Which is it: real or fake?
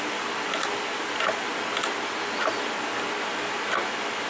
real